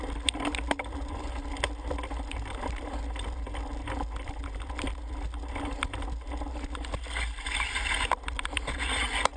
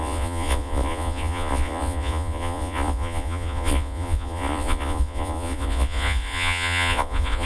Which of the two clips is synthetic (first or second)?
second